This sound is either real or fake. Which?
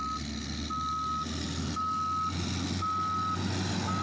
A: real